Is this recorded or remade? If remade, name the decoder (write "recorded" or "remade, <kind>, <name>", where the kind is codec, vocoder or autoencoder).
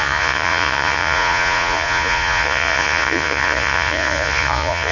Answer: remade, vocoder, Vocos